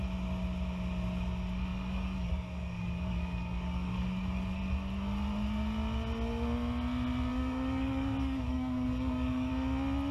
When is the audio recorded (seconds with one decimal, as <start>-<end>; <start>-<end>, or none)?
0.0-1.7; 4.6-7.3; 9.5-10.1